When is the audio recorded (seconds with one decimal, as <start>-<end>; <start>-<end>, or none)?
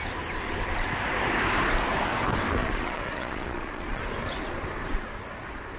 0.0-2.6; 4.0-5.8